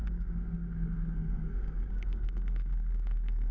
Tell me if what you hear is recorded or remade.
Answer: remade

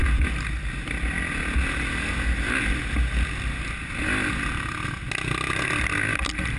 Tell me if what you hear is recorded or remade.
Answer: recorded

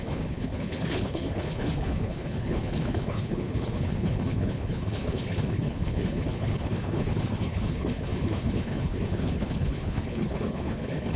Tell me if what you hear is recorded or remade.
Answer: remade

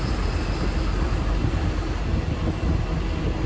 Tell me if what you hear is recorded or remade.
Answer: recorded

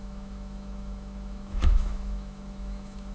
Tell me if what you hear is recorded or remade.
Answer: remade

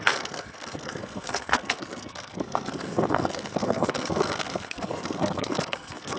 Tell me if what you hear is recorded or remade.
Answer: remade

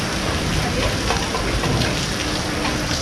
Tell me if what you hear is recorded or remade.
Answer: recorded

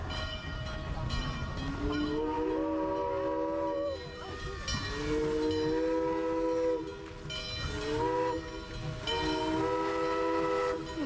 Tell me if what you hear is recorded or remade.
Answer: recorded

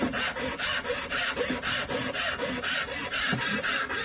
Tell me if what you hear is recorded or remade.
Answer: recorded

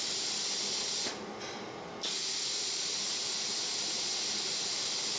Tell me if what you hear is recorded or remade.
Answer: recorded